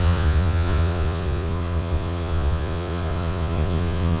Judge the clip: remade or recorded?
remade